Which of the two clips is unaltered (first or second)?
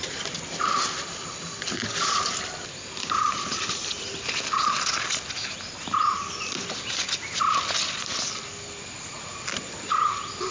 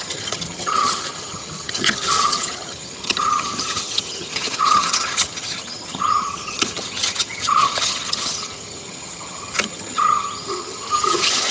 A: first